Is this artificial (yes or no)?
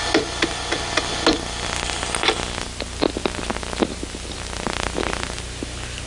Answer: no